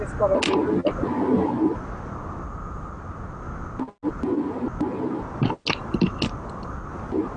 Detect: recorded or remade recorded